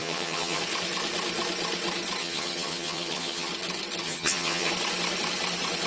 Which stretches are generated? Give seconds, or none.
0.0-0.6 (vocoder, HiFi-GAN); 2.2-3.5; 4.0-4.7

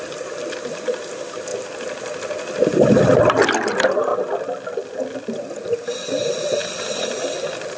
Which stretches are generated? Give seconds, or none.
none

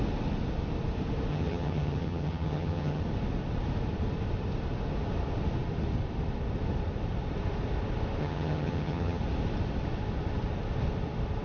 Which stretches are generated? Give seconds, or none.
1.3-3.0 (vocoder, HiFi-GAN); 8.2-9.2

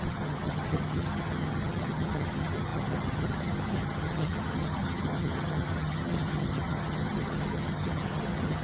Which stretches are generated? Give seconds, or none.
0.0-8.6 (vocoder, HiFi-GAN)

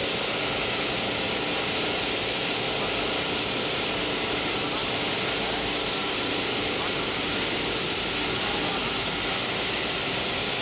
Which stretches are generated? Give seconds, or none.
none

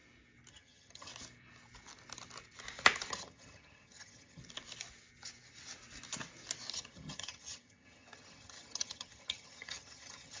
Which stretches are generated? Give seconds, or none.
0.5-1.1 (vocoder, HiFi-GAN); 3.1-4.4; 6.7-10.4

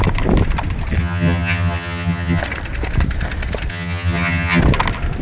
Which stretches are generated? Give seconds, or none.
1.0-2.4 (vocoder, HiFi-GAN); 3.7-4.6